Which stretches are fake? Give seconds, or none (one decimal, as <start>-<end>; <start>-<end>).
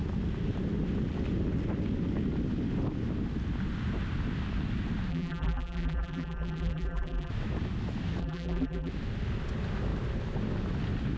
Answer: 5.1-7.3; 8.2-8.9